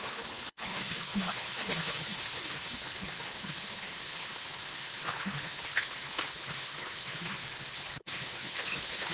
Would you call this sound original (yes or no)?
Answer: no